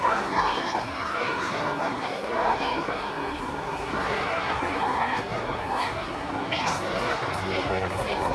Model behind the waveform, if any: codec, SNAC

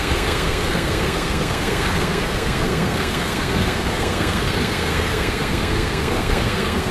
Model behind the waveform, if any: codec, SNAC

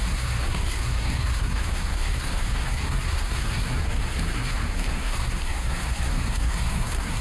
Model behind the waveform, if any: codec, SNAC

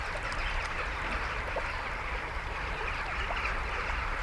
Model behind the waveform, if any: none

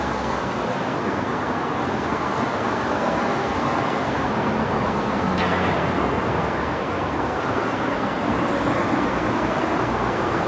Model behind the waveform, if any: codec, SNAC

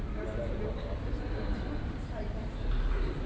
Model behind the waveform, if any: none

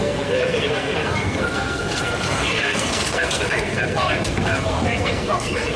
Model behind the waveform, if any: codec, SNAC